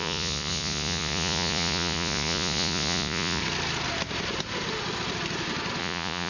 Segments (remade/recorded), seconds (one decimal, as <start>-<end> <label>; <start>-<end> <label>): 0.0-3.4 remade; 3.4-5.8 recorded; 5.8-6.3 remade